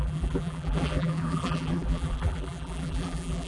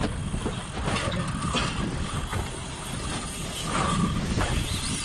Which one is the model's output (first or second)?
first